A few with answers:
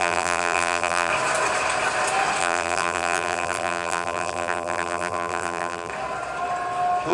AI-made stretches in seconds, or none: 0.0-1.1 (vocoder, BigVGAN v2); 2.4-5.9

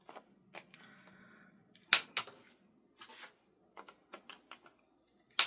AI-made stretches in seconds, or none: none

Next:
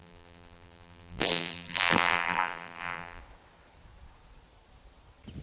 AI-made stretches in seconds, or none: 0.0-3.2 (vocoder, BigVGAN v2)

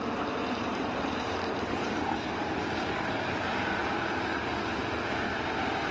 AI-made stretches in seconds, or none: 0.0-3.8 (vocoder, BigVGAN v2)

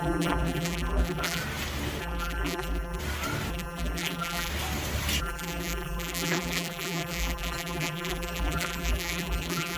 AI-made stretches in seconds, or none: 0.0-1.4 (vocoder, BigVGAN v2); 2.0-3.0; 3.5-4.5; 5.2-9.8